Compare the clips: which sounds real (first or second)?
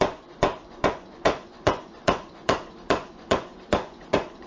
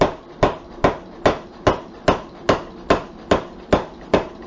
second